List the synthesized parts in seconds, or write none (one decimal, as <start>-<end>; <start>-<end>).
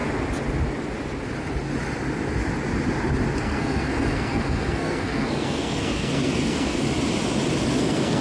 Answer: 3.4-6.8; 7.7-8.2